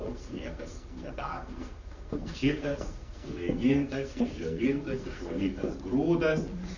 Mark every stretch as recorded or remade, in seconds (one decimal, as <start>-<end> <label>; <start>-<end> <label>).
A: 0.0-5.7 remade; 5.7-6.8 recorded